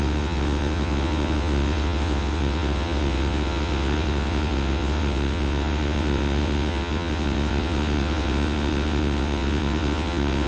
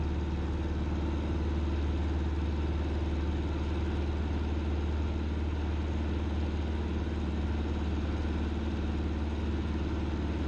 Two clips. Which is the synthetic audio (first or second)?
first